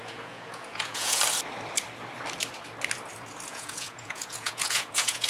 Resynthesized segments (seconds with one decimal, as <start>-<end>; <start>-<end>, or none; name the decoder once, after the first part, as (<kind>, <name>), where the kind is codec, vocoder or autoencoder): 0.0-1.2 (vocoder, Vocos); 3.5-5.3